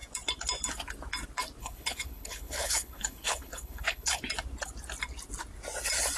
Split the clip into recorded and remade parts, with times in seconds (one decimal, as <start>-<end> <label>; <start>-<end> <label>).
0.0-1.6 recorded; 1.6-4.2 remade; 4.2-6.2 recorded